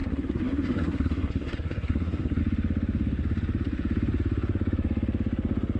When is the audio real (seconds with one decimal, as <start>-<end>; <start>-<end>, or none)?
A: 2.4-5.8